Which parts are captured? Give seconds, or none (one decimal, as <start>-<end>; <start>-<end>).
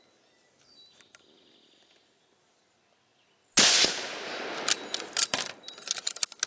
0.0-6.5